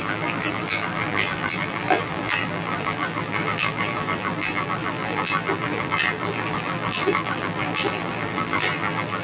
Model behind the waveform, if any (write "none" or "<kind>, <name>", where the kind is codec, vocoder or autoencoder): vocoder, BigVGAN v2